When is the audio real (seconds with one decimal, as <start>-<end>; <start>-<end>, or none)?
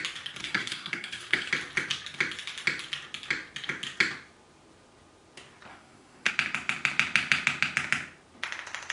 0.0-0.4; 1.5-5.7; 6.3-8.9